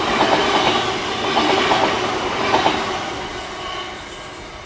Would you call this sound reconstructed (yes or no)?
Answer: no